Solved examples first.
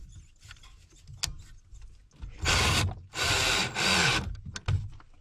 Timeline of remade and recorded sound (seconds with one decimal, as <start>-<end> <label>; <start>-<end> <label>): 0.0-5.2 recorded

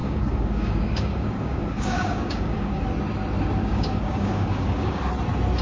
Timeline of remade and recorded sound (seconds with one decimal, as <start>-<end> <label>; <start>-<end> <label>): 0.0-2.8 remade; 2.8-3.6 recorded; 3.6-5.0 remade; 5.0-5.6 recorded

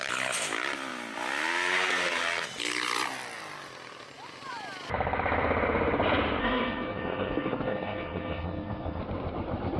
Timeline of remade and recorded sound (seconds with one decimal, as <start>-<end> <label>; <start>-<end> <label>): 0.0-6.4 recorded; 6.4-9.0 remade; 9.0-9.8 recorded

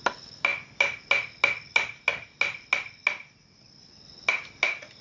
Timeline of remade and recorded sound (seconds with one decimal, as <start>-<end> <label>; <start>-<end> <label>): 0.0-5.0 recorded

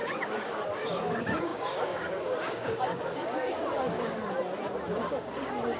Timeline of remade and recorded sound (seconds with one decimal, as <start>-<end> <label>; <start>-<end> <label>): 0.0-4.2 remade; 4.2-5.0 recorded; 5.0-5.8 remade